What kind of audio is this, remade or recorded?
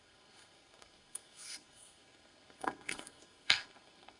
remade